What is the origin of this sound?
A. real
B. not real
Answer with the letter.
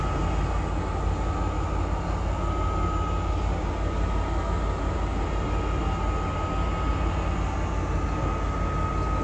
A